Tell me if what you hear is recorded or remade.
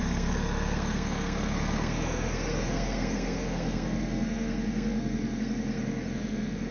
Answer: remade